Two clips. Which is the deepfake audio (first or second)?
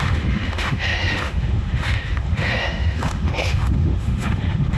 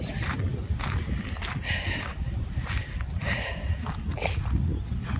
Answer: first